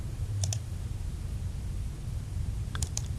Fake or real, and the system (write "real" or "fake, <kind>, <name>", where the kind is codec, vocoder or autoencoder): fake, vocoder, BigVGAN v2